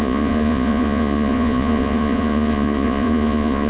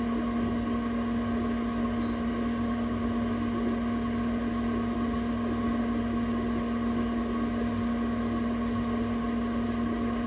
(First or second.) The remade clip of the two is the first